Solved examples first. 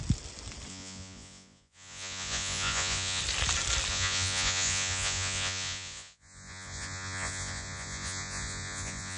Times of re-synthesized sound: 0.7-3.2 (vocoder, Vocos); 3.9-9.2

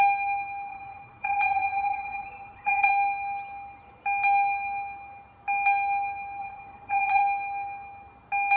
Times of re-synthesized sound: 0.7-2.9 (vocoder, Vocos); 6.4-7.2

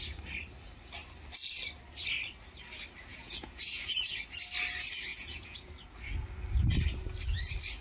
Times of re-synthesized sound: 3.1-3.6 (vocoder, Vocos); 5.1-5.7

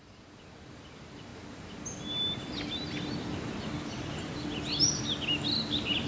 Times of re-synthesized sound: none

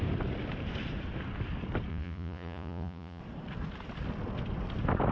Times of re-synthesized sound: 1.9-3.2 (vocoder, Vocos)